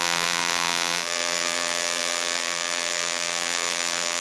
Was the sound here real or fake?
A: fake